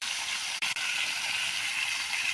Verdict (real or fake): fake